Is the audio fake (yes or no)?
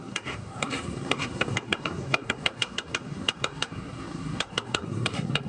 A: yes